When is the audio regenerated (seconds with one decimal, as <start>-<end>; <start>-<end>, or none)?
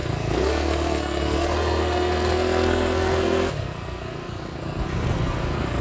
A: 0.0-5.8